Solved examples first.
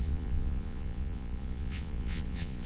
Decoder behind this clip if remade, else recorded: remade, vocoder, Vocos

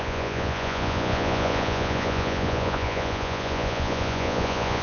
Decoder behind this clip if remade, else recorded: remade, vocoder, Vocos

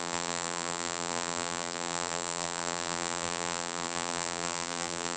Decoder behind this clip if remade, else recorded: remade, vocoder, BigVGAN v2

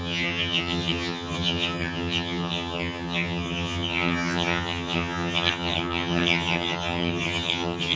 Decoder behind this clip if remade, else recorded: remade, vocoder, HiFi-GAN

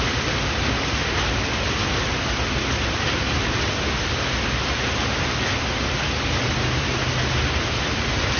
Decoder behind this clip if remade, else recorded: recorded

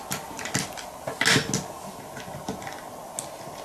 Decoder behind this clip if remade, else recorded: recorded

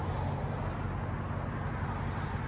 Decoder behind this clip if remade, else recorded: recorded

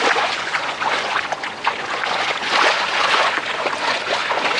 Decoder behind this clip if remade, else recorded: remade, vocoder, Vocos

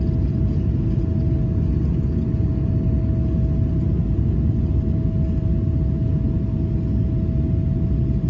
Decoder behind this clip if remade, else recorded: recorded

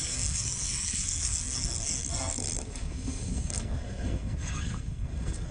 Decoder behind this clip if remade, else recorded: remade, codec, SNAC